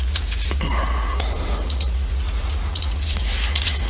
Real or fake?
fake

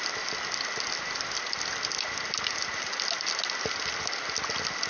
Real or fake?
real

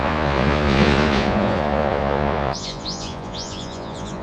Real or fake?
fake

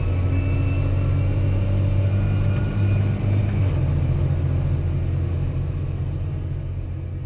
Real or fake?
real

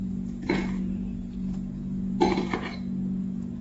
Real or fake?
fake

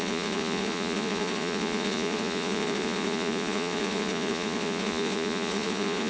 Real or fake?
fake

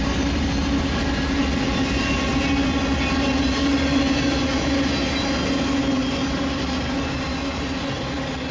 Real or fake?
real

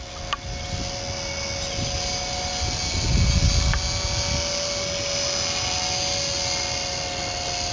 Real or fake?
real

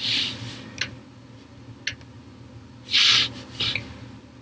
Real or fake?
real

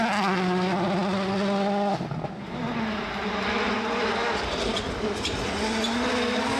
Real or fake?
real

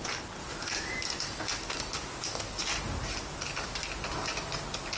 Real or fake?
real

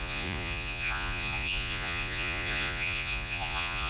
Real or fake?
fake